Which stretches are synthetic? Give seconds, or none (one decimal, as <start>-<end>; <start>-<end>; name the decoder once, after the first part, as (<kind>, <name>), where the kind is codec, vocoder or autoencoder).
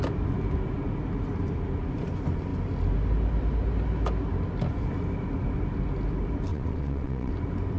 6.5-7.3 (vocoder, WaveNeXt)